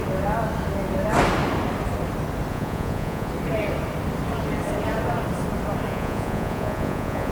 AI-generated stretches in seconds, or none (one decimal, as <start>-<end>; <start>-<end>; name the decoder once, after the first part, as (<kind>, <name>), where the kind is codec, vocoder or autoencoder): 2.5-3.3 (vocoder, Vocos); 5.9-7.3